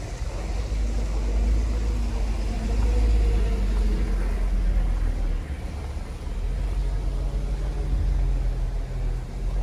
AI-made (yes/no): no